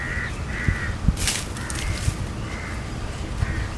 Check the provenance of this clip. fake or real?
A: real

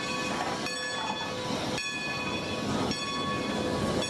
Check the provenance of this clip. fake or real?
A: real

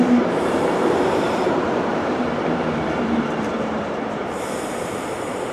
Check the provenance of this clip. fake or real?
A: fake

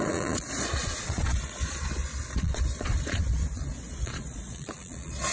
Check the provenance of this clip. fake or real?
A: fake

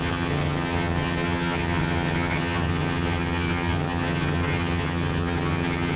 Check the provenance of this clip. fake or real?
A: fake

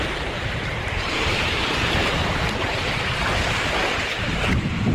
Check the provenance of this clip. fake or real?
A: fake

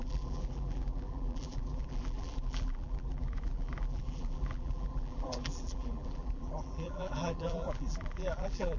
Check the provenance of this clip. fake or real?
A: fake